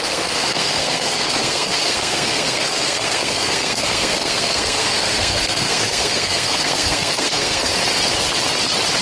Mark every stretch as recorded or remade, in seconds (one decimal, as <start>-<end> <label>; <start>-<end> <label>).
0.0-7.7 remade; 7.7-9.0 recorded